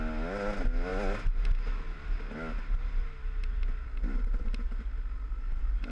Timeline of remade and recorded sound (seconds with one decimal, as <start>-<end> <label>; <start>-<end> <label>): 0.0-5.9 recorded